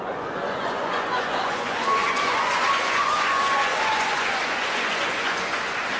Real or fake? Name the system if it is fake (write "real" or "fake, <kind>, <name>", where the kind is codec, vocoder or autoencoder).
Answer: fake, vocoder, Vocos